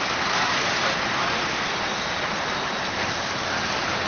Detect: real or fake fake